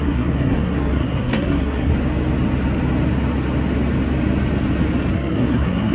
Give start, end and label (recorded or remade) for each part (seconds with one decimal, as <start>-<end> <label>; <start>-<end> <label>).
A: 0.0-1.9 remade; 1.9-5.1 recorded; 5.1-5.9 remade